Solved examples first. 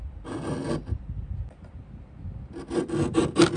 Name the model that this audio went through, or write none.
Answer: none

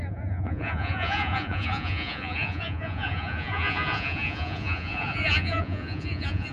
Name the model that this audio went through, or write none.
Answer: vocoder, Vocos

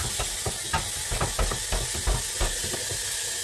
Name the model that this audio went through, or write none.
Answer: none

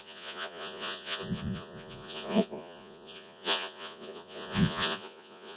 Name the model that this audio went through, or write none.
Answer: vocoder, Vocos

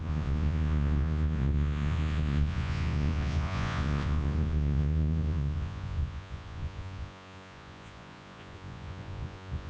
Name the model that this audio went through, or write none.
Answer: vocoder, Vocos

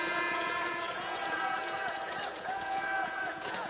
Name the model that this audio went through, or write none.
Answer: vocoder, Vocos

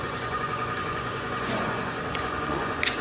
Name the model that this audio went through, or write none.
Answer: vocoder, Vocos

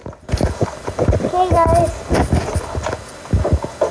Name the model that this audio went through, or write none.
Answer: none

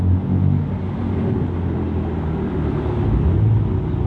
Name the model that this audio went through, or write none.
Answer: none